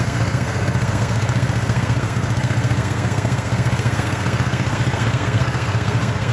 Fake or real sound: fake